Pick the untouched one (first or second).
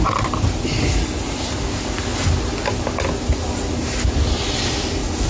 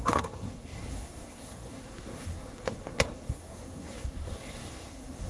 first